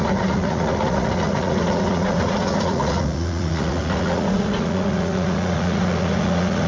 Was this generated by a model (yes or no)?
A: yes